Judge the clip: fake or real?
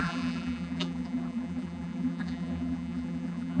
fake